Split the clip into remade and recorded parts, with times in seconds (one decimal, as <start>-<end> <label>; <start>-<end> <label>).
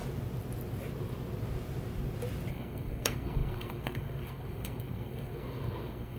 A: 0.0-2.5 recorded; 2.5-6.2 remade